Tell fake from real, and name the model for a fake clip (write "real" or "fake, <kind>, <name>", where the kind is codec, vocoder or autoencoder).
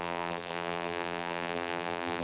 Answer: fake, vocoder, BigVGAN v2